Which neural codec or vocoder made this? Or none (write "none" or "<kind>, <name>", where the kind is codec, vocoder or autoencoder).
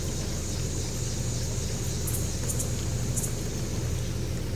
none